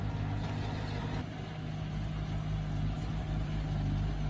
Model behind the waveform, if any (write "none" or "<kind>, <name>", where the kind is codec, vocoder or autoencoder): none